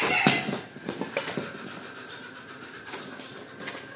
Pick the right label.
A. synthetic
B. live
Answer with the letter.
B